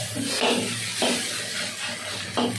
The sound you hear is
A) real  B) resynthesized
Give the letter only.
A